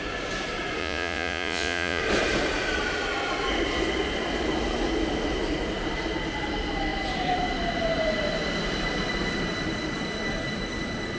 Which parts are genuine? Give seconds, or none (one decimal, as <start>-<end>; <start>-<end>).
0.0-0.8; 2.0-11.2